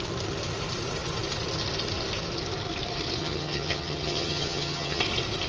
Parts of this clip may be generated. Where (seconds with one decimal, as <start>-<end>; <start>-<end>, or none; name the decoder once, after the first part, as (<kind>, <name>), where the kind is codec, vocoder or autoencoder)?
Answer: 3.2-5.0 (vocoder, HiFi-GAN)